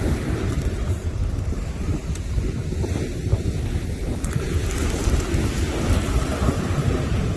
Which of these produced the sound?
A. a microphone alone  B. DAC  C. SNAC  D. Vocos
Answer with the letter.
A